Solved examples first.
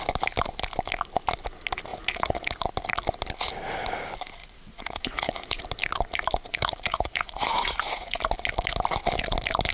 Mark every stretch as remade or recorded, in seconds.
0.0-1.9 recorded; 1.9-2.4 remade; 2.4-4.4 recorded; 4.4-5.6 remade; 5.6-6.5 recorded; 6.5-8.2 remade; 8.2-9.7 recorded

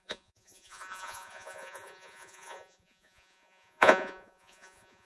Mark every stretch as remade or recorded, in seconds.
0.0-5.1 remade

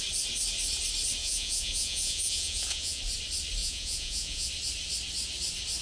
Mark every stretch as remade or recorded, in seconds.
0.0-1.2 recorded; 1.2-3.0 remade; 3.0-3.6 recorded; 3.6-4.5 remade; 4.5-5.8 recorded

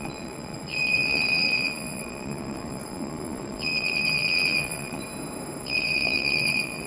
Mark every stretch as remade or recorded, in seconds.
0.0-5.0 remade; 5.0-5.6 recorded; 5.6-6.9 remade

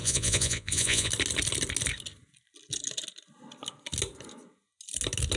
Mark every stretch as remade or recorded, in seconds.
0.0-1.1 remade; 1.1-5.4 recorded